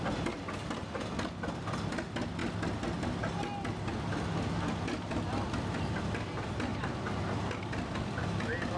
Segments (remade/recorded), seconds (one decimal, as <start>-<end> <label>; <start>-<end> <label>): 0.0-8.8 recorded